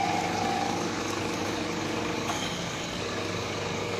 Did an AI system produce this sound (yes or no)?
yes